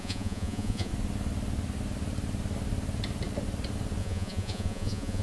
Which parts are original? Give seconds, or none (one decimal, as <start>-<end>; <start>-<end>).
0.9-4.0